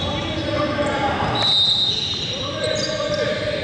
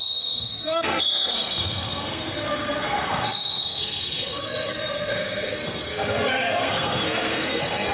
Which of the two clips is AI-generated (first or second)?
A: second